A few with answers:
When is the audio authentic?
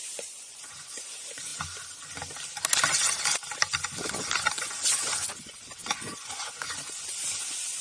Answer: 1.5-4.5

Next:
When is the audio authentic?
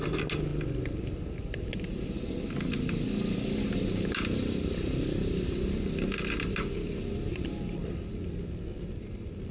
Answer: 0.0-9.5